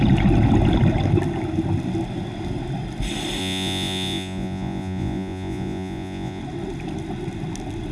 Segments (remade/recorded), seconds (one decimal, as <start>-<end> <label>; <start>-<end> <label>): 0.0-3.4 recorded; 3.4-6.4 remade; 6.4-7.9 recorded